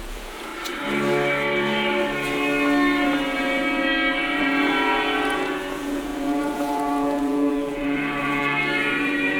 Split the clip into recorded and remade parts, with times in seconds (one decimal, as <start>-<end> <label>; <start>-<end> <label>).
0.0-0.5 remade; 0.5-4.4 recorded; 4.4-9.4 remade